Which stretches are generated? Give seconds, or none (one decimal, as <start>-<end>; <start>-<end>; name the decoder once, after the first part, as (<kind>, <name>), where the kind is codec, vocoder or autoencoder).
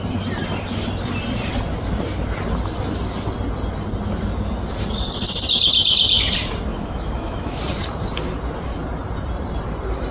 6.7-7.6 (autoencoder, DAC-VAE)